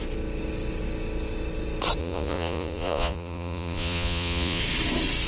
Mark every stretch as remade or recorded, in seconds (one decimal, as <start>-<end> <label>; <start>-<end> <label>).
0.0-2.0 recorded; 2.0-4.6 remade; 4.6-5.3 recorded